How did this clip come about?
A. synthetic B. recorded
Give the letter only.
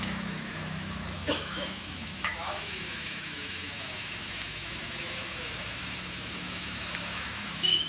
A